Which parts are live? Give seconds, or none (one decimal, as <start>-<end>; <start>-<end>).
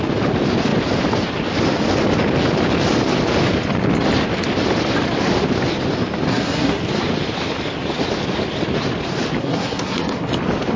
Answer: 0.0-6.3; 6.8-9.4; 10.3-10.8